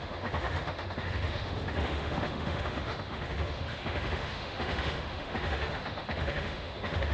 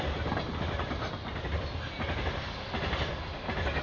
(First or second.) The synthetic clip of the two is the first